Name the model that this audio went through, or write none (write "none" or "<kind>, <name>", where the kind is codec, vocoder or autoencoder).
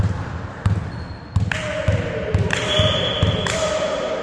none